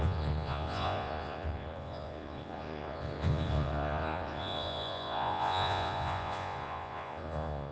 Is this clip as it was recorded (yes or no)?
no